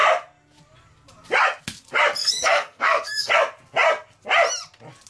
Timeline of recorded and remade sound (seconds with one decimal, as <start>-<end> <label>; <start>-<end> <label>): 0.0-2.2 recorded; 2.2-3.3 remade; 3.3-5.1 recorded